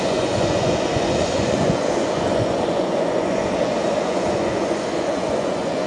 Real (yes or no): no